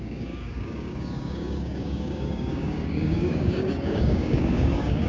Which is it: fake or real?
fake